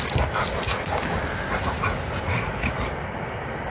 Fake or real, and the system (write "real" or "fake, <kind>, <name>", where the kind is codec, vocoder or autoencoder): real